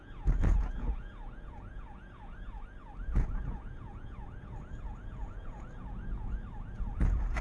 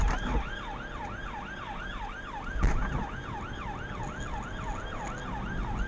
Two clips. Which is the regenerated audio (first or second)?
first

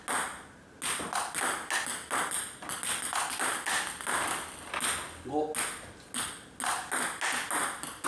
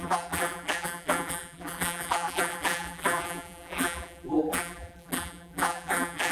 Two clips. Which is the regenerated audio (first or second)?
second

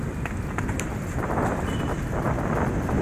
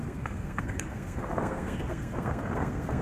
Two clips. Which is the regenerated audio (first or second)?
second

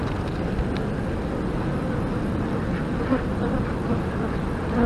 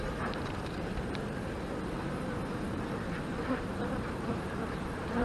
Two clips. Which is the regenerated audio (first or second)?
second